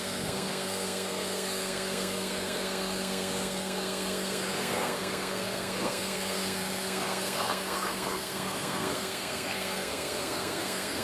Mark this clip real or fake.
fake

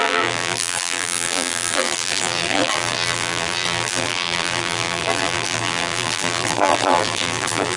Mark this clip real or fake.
fake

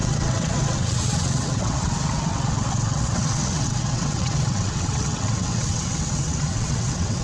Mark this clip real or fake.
fake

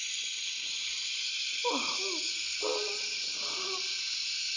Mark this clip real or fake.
real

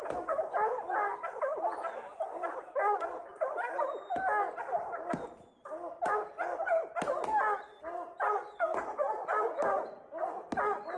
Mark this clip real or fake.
real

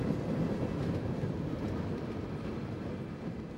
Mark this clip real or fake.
real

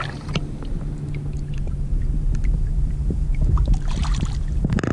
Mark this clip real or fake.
fake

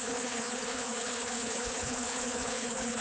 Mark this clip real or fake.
fake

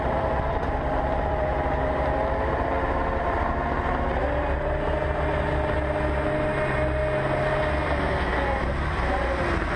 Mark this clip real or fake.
real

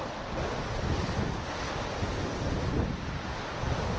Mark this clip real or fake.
real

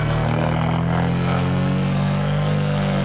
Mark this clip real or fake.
fake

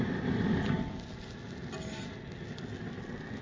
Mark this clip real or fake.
real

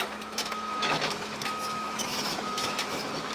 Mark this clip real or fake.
fake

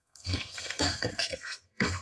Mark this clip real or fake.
fake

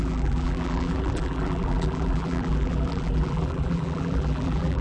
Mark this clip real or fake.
fake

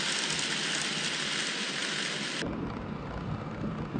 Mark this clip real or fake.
real